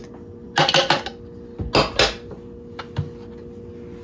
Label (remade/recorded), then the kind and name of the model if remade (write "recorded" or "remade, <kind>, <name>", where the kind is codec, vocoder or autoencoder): recorded